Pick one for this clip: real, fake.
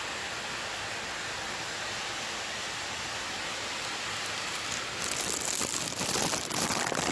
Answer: real